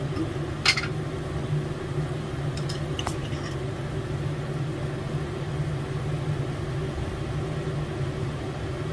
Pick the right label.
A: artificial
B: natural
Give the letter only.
B